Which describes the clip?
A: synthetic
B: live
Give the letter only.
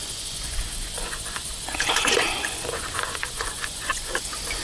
A